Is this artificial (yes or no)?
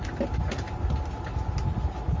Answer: no